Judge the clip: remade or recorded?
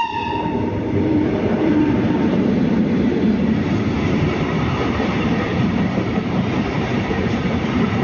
remade